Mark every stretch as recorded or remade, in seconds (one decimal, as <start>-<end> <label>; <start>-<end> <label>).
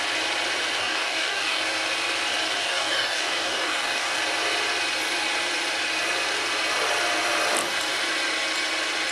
0.0-0.8 recorded; 0.8-1.6 remade; 1.6-2.6 recorded; 2.6-4.2 remade; 4.2-9.1 recorded